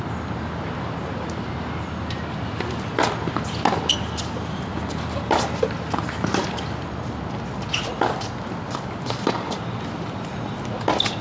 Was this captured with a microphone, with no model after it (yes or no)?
yes